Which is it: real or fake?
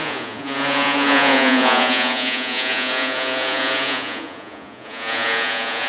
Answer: fake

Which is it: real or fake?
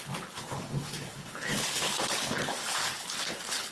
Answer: fake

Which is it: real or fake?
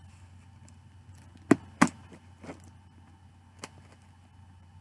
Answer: real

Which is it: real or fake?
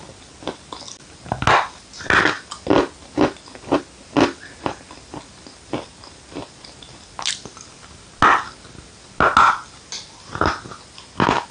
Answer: real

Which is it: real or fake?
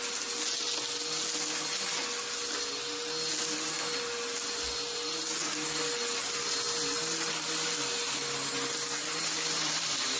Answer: real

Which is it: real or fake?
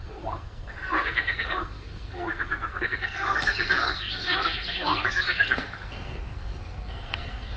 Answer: fake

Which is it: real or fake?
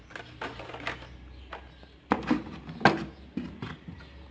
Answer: real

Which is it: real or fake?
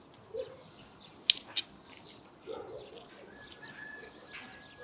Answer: real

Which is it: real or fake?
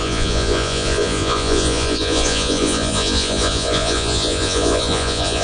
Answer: fake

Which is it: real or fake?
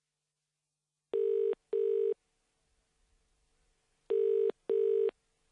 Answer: real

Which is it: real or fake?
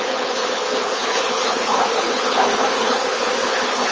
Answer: fake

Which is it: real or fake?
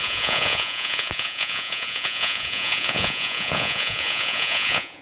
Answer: fake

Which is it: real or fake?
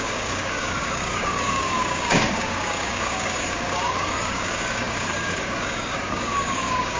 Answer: fake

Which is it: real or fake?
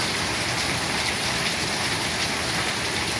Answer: real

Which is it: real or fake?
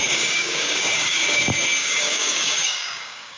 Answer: fake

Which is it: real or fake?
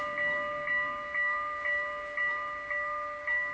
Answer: real